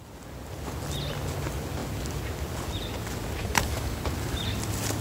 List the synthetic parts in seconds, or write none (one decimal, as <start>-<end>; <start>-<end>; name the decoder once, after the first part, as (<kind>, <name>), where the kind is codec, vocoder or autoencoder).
3.4-4.0 (codec, DAC)